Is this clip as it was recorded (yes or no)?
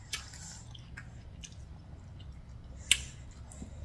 yes